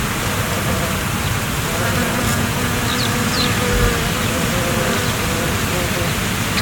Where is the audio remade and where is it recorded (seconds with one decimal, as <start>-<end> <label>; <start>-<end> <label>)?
0.0-2.3 recorded; 2.3-2.8 remade; 2.8-6.6 recorded